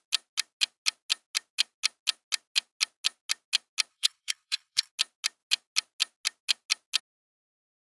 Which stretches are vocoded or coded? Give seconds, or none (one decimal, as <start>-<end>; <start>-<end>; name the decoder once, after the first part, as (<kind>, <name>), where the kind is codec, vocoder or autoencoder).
3.9-4.9 (codec, HILCodec)